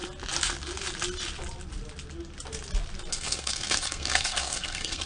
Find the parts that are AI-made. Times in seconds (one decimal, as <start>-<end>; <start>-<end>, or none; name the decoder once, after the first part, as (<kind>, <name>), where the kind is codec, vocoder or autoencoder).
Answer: 3.1-5.1 (codec, SNAC)

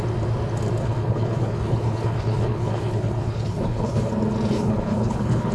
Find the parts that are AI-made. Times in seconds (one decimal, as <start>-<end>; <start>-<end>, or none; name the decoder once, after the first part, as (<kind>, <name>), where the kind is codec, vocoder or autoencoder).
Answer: 0.8-4.1 (codec, HILCodec); 4.5-5.5

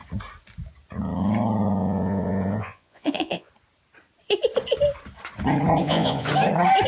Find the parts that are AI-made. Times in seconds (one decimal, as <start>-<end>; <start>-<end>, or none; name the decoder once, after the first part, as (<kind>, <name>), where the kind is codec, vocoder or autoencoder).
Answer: 1.8-3.5 (vocoder, Vocos); 5.8-6.3

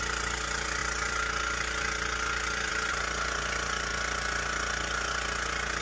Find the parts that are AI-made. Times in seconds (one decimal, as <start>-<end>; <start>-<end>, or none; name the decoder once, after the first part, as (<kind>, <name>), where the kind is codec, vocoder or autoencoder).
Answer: none

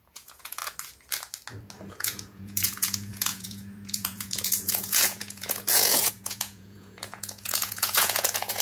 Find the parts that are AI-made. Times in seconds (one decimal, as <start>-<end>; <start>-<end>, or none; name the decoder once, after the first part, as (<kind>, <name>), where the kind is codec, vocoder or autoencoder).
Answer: 0.0-0.6 (vocoder, Vocos); 1.9-8.6

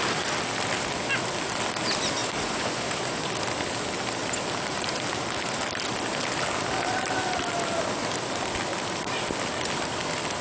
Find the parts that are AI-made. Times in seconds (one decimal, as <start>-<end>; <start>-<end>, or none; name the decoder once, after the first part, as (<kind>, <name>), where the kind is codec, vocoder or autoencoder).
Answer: 2.2-3.3 (vocoder, Vocos)